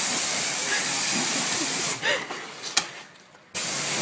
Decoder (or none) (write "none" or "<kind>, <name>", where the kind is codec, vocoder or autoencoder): none